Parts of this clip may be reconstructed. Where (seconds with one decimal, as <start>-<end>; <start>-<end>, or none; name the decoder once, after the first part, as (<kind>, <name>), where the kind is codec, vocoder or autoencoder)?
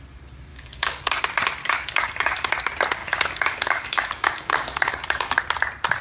0.5-1.2 (codec, DAC); 1.6-2.5; 3.0-5.4